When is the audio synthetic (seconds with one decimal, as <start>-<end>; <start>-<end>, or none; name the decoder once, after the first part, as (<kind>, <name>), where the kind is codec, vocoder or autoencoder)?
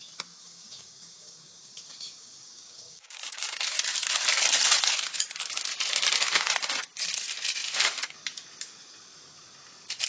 0.4-3.6 (codec, DAC)